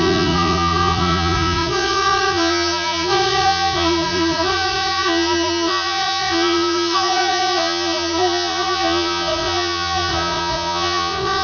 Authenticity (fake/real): fake